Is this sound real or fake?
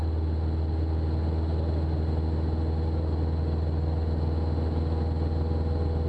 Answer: real